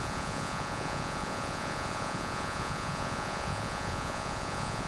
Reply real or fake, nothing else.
fake